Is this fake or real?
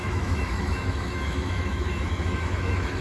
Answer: fake